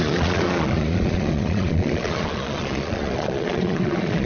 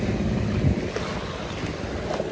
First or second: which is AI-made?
first